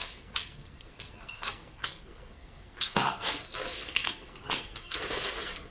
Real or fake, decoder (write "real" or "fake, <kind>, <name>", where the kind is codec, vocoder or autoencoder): fake, codec, SNAC